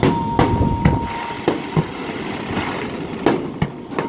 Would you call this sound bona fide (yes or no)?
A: yes